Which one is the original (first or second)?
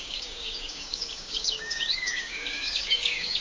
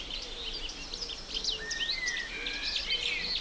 second